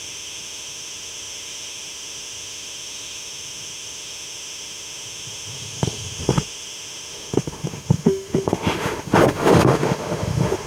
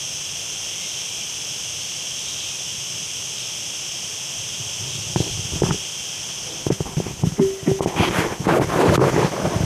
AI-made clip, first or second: first